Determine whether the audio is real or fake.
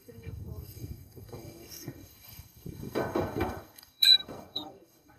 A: fake